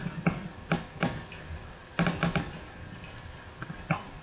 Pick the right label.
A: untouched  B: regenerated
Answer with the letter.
A